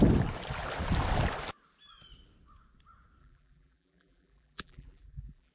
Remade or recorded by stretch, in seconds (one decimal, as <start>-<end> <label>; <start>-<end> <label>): 0.0-3.2 recorded; 3.2-5.5 remade